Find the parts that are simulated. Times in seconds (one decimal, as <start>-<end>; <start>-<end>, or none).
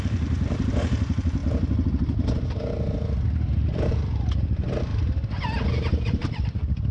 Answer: 0.0-1.4; 3.5-4.9; 5.7-6.9